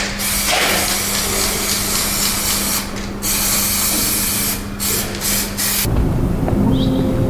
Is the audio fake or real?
real